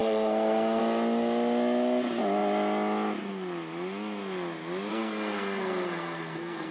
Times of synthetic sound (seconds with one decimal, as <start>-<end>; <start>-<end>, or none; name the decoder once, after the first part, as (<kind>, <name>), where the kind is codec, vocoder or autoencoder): 0.0-0.8 (codec, SNAC); 4.9-6.7